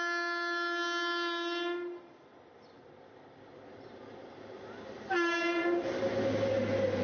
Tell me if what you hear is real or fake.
real